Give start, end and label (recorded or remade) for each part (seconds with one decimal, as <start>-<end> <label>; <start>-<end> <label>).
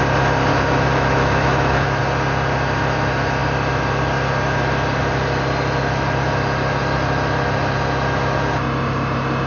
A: 0.0-0.5 recorded; 0.5-2.0 remade; 2.0-9.5 recorded